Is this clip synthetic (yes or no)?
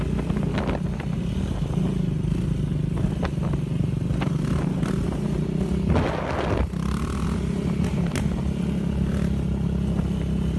no